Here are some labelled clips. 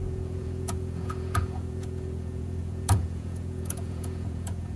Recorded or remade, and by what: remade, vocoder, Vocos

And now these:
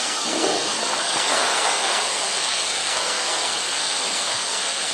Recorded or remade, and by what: remade, codec, SNAC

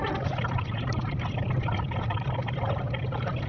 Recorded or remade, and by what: recorded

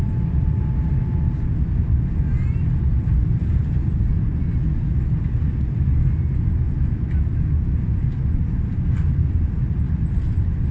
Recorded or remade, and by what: recorded